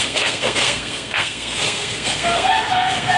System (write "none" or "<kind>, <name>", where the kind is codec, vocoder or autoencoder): codec, SNAC